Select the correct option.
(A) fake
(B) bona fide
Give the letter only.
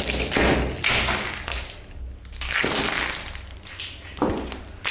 B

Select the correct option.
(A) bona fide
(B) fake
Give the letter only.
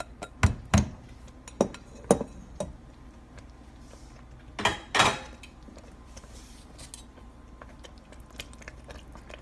A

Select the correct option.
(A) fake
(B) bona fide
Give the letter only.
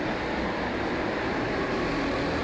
B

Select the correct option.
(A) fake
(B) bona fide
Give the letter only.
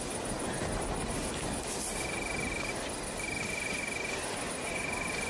B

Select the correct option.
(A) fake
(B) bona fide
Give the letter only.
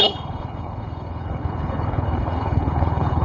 A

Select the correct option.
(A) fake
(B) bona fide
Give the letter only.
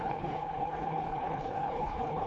A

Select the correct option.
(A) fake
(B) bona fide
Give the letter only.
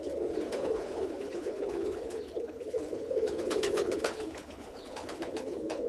A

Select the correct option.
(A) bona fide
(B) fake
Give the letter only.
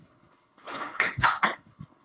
B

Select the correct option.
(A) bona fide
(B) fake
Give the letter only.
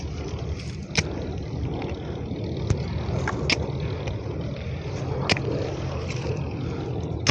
A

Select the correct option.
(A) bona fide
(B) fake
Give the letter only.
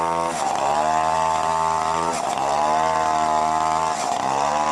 A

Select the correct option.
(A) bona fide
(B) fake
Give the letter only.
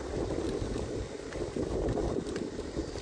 A